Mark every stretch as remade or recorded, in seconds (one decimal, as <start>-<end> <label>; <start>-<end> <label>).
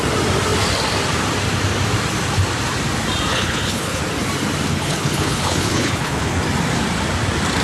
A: 0.0-3.3 recorded; 3.3-4.0 remade; 4.0-4.7 recorded; 4.7-6.4 remade; 6.4-7.6 recorded